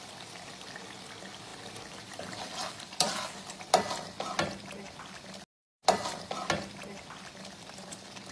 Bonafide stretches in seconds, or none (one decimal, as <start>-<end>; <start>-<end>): 0.0-8.3